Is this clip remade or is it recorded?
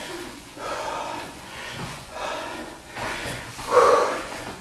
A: remade